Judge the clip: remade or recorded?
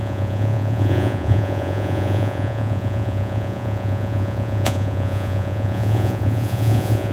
remade